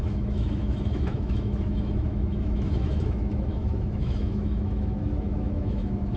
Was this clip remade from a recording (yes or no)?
yes